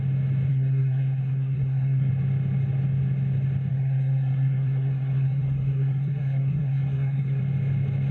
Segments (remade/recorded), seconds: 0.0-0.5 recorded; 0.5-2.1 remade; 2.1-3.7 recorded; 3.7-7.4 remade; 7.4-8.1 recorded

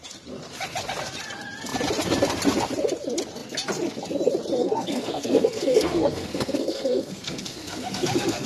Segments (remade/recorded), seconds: 0.0-4.6 recorded; 4.6-8.5 remade

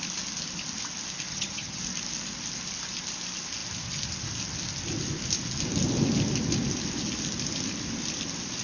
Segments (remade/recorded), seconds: 0.0-1.3 recorded; 1.3-1.8 remade; 1.8-8.6 recorded

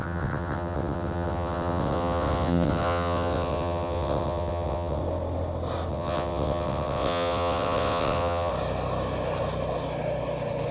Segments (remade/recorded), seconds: 0.0-5.0 remade; 5.0-5.9 recorded; 5.9-8.5 remade; 8.5-10.7 recorded

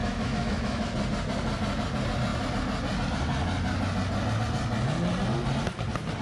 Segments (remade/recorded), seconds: 0.0-0.9 remade; 0.9-6.2 recorded

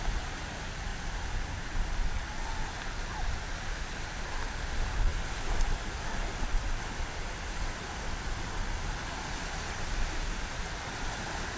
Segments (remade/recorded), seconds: 0.0-11.6 recorded

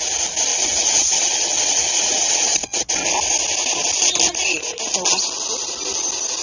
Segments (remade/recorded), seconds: 0.0-0.5 recorded; 0.5-2.9 remade; 2.9-6.4 recorded

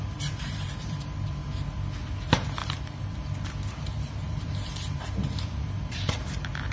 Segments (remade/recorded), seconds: 0.0-1.4 remade; 1.4-2.2 recorded; 2.2-2.6 remade; 2.6-3.7 recorded; 3.7-6.7 remade